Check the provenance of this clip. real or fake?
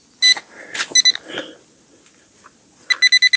real